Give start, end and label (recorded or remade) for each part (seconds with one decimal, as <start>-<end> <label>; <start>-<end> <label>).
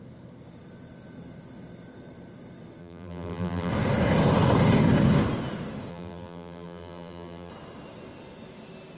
0.0-2.8 recorded; 2.8-3.7 remade; 3.7-5.9 recorded; 5.9-7.5 remade; 7.5-9.0 recorded